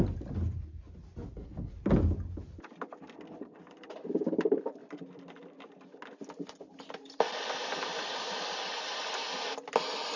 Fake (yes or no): no